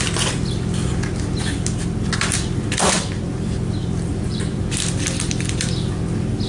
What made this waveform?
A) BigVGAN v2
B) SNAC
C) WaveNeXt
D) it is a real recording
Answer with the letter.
D